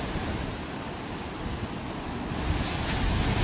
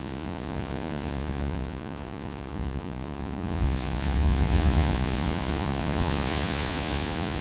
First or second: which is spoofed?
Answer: second